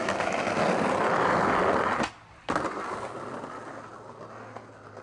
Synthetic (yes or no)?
no